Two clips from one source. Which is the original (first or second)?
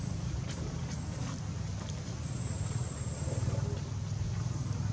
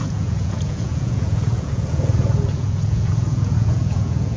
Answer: first